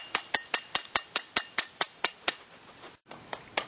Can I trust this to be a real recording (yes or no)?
yes